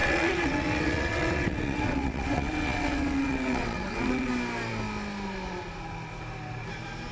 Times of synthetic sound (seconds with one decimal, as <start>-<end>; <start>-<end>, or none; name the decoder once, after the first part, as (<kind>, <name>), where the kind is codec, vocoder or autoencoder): 0.0-4.3 (vocoder, WaveNeXt)